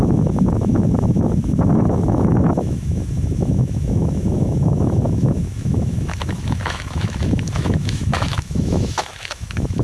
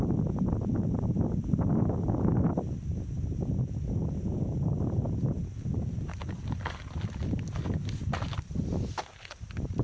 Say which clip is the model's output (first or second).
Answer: first